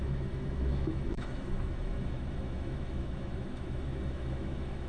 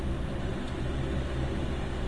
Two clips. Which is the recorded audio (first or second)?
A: second